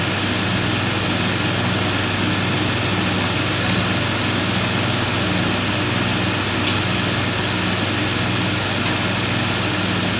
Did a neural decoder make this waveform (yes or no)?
no